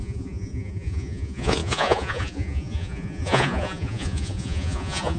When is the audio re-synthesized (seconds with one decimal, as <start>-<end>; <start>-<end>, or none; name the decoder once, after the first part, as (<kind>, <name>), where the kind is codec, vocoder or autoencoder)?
0.0-5.2 (vocoder, Vocos)